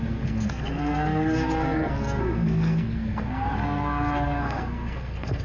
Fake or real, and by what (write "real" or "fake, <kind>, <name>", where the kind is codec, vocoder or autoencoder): fake, codec, SNAC